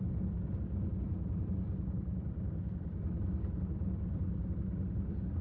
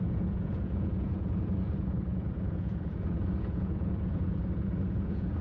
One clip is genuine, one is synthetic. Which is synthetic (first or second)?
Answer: second